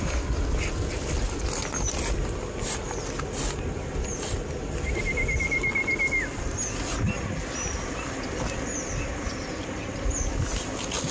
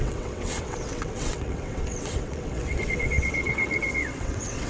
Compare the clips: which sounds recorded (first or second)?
first